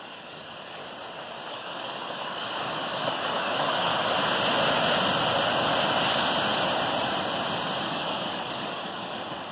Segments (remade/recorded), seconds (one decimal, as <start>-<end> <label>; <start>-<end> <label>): 0.0-0.8 remade; 0.8-1.5 recorded; 1.5-3.9 remade; 3.9-7.8 recorded; 7.8-9.5 remade